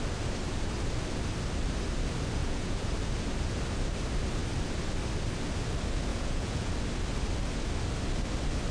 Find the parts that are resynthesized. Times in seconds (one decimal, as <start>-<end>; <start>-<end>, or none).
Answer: 2.4-2.9; 6.1-6.7